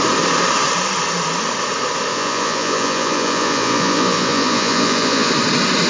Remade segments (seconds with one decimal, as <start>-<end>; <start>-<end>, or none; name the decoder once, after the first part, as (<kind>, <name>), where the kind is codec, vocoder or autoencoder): 2.1-5.3 (vocoder, Vocos)